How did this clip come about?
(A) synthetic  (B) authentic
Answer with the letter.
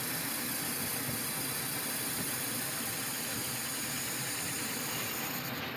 B